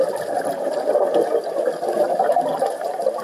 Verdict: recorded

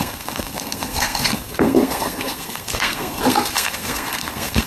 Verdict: remade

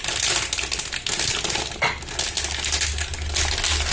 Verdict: recorded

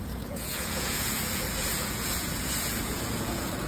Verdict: remade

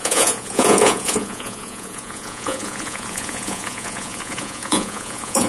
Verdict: remade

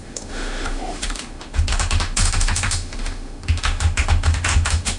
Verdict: remade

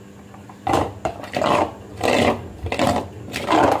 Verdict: recorded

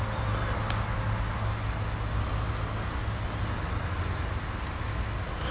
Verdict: recorded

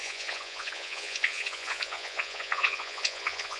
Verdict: remade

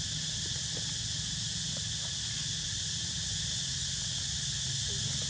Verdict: recorded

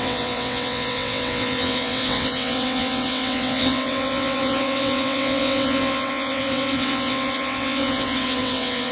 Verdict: remade